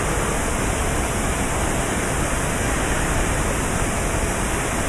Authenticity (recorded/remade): recorded